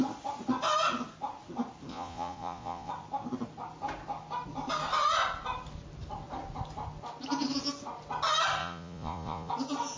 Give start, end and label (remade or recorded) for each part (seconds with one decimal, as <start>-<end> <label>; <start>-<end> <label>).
0.0-1.9 recorded; 1.9-2.9 remade; 2.9-8.6 recorded; 8.6-9.5 remade; 9.5-10.0 recorded